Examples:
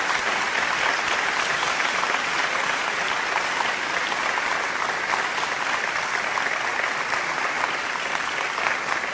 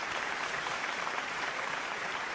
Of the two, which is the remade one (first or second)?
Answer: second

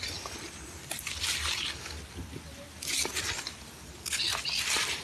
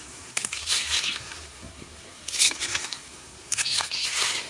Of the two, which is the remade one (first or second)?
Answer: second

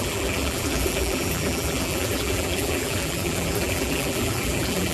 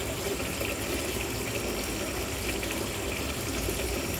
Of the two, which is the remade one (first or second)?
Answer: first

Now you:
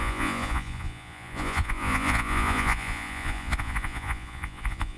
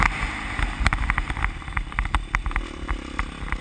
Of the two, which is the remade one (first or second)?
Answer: first